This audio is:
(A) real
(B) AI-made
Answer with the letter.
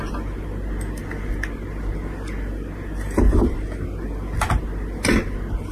A